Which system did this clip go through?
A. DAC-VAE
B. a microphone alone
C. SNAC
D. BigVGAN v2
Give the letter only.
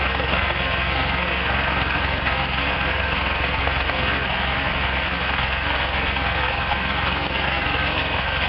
C